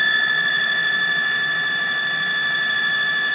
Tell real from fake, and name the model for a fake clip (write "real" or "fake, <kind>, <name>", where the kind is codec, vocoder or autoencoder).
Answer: fake, autoencoder, DAC-VAE